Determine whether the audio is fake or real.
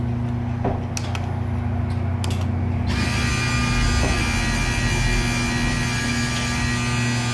real